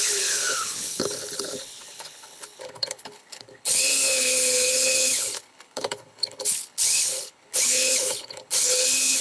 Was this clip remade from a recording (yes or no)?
yes